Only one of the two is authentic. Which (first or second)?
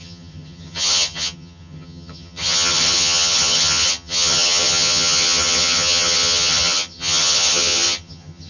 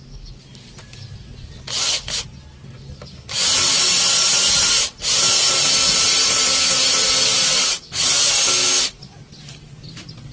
second